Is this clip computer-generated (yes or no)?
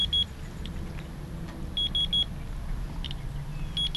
no